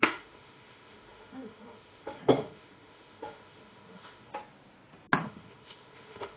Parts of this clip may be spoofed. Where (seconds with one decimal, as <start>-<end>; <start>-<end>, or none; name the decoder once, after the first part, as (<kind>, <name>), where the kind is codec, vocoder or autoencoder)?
0.0-4.3 (autoencoder, DAC-VAE); 5.2-6.4